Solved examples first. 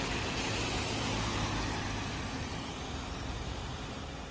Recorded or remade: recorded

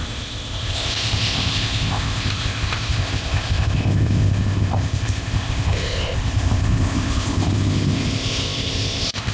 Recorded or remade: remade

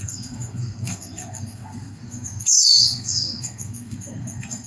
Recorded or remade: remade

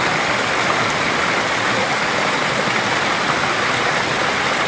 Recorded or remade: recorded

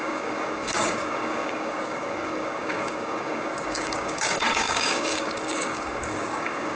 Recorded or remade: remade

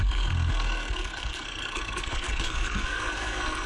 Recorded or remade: remade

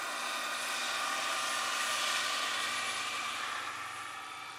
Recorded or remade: recorded